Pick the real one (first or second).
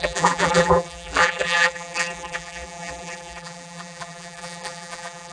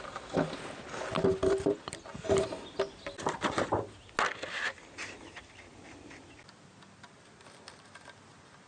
second